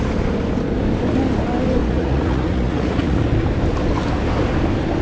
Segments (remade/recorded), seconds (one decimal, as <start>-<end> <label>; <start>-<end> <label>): 0.0-1.8 recorded; 1.8-3.2 remade; 3.2-5.0 recorded